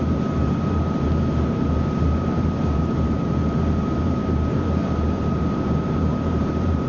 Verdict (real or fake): fake